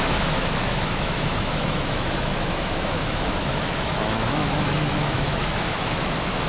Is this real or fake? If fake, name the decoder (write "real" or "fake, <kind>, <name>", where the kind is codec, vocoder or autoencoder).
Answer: fake, autoencoder, DAC-VAE